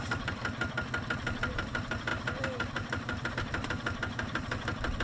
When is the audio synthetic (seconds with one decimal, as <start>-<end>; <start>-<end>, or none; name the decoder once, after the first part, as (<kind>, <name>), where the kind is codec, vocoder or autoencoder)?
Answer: 0.0-0.4 (vocoder, BigVGAN v2); 1.5-5.0